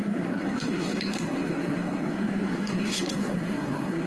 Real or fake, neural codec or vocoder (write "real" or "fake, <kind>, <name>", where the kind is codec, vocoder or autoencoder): fake, codec, SNAC